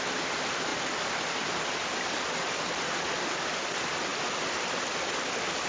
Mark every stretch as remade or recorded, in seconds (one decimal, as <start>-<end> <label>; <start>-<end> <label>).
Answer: 0.0-5.7 recorded